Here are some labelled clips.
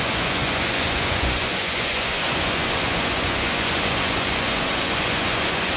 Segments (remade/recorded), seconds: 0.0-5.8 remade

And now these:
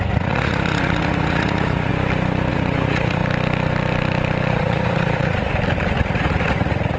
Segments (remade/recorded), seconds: 0.0-1.9 remade; 1.9-2.5 recorded; 2.5-3.2 remade; 3.2-4.5 recorded; 4.5-5.5 remade; 5.5-6.0 recorded; 6.0-7.0 remade